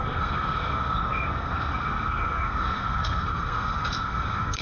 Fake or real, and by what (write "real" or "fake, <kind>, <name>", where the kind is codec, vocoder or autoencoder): fake, codec, SNAC